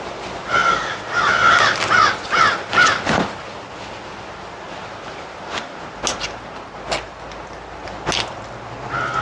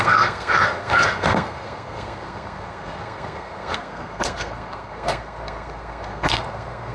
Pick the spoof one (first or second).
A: second